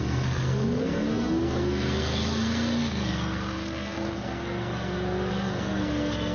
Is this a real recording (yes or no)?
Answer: no